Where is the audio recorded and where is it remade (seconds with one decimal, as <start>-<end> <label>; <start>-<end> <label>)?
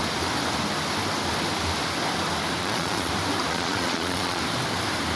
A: 0.0-2.6 recorded; 2.6-3.1 remade; 3.1-3.5 recorded; 3.5-4.4 remade; 4.4-5.2 recorded